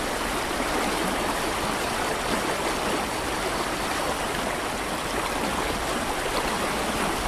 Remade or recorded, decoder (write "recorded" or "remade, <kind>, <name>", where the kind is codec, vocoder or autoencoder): recorded